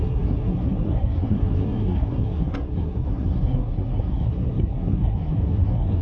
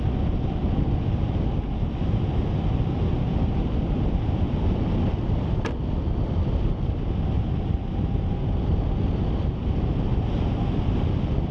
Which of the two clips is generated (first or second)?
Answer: first